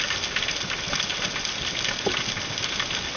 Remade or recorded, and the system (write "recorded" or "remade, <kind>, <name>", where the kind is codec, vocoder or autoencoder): recorded